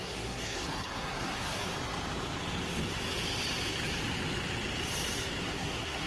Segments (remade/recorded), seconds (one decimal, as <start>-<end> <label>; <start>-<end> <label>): 0.0-1.7 remade; 1.7-5.4 recorded; 5.4-6.1 remade

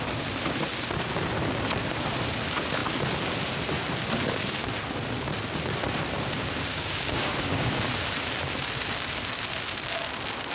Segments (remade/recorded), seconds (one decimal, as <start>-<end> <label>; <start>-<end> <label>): 0.0-6.7 recorded; 6.7-7.9 remade; 7.9-10.5 recorded